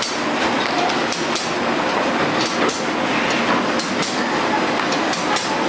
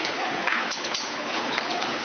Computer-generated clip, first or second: second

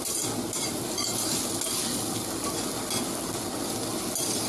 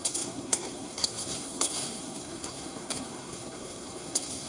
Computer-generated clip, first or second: second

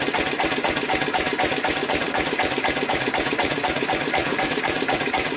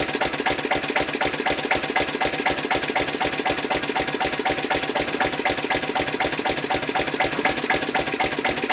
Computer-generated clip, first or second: first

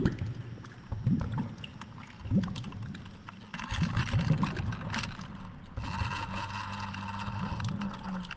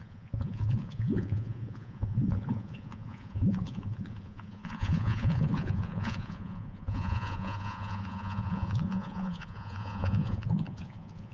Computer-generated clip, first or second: second